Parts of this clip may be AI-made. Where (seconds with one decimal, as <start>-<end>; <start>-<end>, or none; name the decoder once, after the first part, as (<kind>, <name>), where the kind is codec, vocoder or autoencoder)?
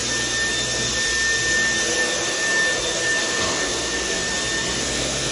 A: 3.2-4.2 (codec, SNAC); 4.8-5.3